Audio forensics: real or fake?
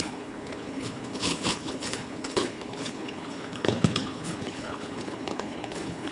fake